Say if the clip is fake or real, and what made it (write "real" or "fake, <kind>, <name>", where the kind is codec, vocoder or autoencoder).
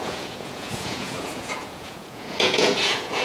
fake, vocoder, Vocos